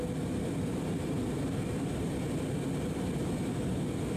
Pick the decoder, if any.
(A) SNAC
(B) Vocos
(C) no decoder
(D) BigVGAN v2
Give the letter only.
C